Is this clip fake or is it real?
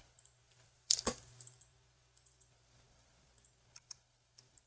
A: fake